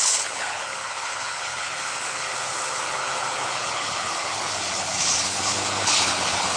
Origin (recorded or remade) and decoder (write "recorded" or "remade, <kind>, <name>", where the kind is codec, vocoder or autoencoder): remade, codec, HILCodec